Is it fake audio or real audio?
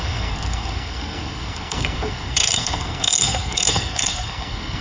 fake